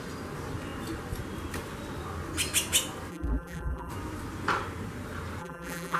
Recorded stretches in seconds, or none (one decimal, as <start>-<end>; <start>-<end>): 0.0-3.1; 3.9-5.4